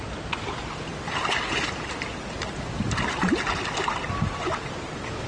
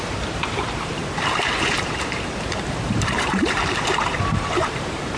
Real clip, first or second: first